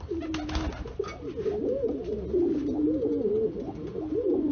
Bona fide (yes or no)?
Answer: yes